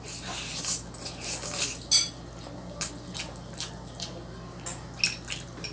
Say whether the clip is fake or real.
real